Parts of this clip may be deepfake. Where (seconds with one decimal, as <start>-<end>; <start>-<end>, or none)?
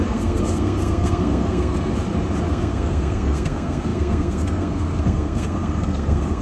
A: 0.0-1.9; 2.5-6.4